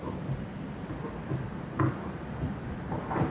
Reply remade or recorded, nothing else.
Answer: recorded